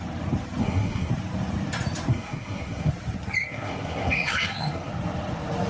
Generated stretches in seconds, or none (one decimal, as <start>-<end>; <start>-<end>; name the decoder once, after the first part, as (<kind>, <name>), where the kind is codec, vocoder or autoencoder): 0.6-1.1 (codec, SNAC); 2.1-2.9; 3.5-4.9

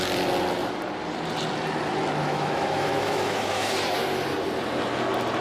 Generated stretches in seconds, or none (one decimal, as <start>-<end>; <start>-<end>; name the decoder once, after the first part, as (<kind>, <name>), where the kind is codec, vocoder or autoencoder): 2.2-3.7 (autoencoder, DAC-VAE)

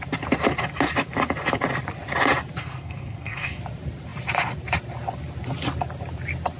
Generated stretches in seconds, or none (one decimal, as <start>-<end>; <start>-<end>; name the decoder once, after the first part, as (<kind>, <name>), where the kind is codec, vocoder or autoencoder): 2.6-3.6 (codec, SNAC)

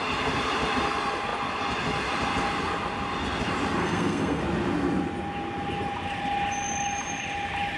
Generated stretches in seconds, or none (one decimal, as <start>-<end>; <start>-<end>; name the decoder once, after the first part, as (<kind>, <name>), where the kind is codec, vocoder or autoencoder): 3.8-4.4 (codec, SNAC)